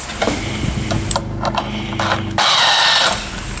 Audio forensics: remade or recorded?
recorded